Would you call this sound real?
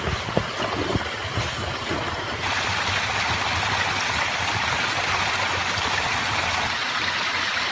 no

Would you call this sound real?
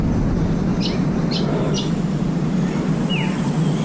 yes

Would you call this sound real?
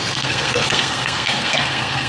no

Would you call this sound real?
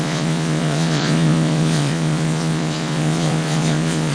no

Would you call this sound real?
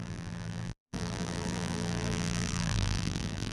no